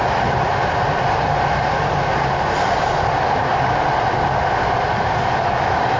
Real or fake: real